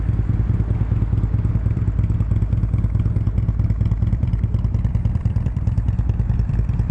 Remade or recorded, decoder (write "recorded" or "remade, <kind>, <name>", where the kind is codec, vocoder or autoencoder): remade, vocoder, BigVGAN v2